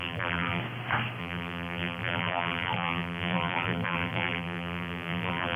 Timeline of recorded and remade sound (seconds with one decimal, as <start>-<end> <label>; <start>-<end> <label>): 0.0-0.6 remade; 0.6-1.2 recorded; 1.2-5.6 remade